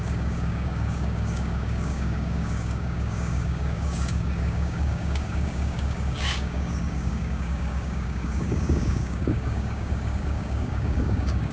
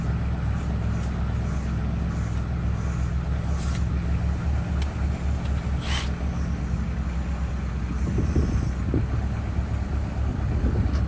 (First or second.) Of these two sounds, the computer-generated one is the first